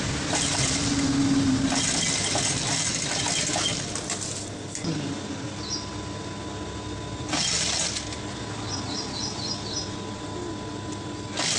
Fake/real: real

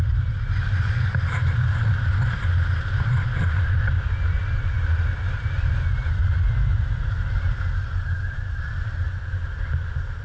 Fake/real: real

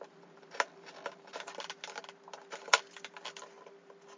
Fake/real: real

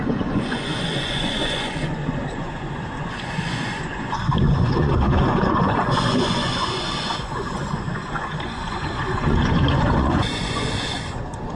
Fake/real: fake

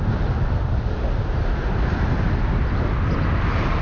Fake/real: real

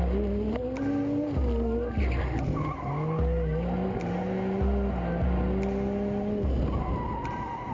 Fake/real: real